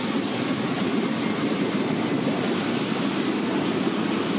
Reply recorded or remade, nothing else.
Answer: recorded